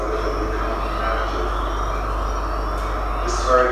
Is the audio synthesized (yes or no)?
no